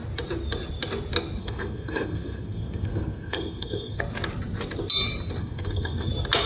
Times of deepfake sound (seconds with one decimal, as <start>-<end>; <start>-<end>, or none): 1.4-4.0; 5.4-6.1